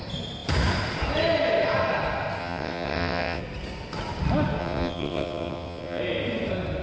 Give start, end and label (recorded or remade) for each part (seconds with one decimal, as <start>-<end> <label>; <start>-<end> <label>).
0.0-2.4 recorded; 2.4-3.4 remade; 3.4-4.6 recorded; 4.6-6.0 remade; 6.0-6.8 recorded